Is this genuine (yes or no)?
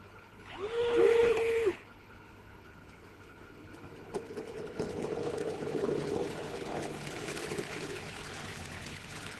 no